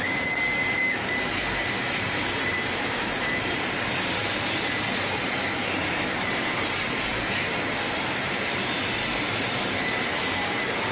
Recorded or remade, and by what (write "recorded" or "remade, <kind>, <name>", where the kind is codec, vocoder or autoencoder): remade, vocoder, BigVGAN v2